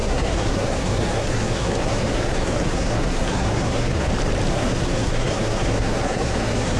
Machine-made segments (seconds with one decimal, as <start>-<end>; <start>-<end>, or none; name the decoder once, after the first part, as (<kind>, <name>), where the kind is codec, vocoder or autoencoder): 0.0-4.1 (codec, SNAC); 4.5-6.8